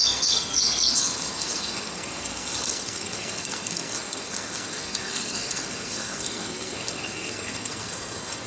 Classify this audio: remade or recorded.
remade